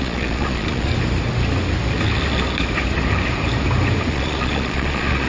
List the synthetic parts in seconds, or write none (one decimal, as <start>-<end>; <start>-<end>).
0.0-0.9; 4.1-5.3